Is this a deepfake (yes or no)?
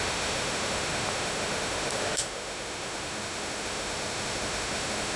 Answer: yes